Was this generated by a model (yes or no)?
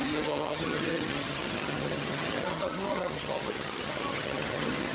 yes